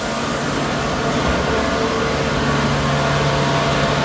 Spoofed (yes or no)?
no